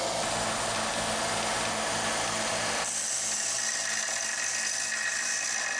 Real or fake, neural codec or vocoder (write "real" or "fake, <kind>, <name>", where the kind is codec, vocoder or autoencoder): real